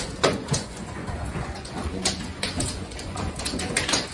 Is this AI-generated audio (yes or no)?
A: yes